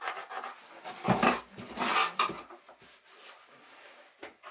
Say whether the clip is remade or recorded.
recorded